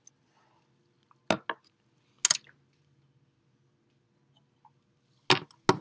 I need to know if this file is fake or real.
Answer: real